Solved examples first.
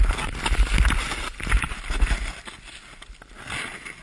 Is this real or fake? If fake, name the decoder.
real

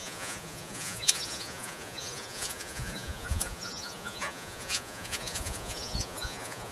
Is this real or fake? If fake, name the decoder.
fake, vocoder, Vocos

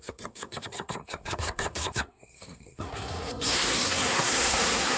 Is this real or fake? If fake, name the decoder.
fake, codec, SNAC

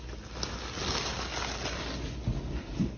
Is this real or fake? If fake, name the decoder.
real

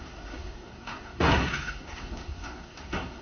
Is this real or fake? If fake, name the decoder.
fake, codec, SNAC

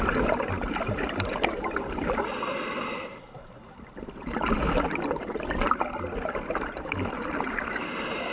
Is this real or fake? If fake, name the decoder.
real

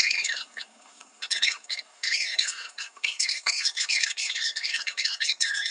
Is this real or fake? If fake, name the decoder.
fake, codec, SNAC